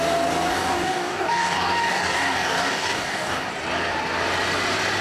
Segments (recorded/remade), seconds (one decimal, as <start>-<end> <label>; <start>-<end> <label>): 0.0-0.5 recorded; 0.5-3.5 remade; 3.5-5.0 recorded